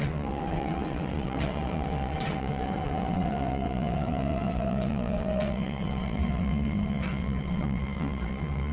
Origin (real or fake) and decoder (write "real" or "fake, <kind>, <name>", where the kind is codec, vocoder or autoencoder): fake, vocoder, WaveNeXt